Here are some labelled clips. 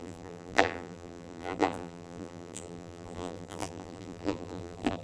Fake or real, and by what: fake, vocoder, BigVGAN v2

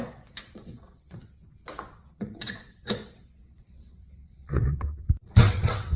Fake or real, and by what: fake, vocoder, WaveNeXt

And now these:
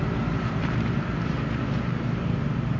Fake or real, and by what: fake, vocoder, BigVGAN v2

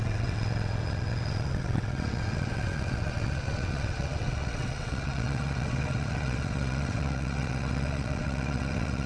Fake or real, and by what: fake, vocoder, WaveNeXt